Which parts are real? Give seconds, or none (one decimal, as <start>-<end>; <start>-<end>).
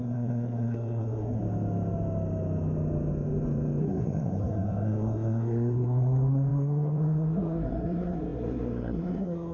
1.4-3.8